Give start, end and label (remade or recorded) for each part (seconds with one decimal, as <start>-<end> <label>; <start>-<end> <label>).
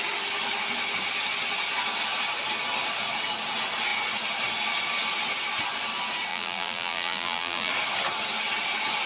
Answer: 0.0-6.3 recorded; 6.3-7.7 remade; 7.7-9.1 recorded